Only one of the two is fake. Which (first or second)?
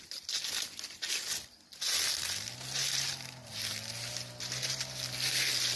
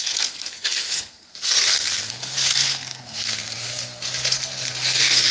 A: second